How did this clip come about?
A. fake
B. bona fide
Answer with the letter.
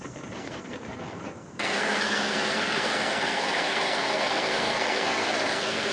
A